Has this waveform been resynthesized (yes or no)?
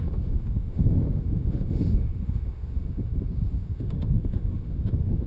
yes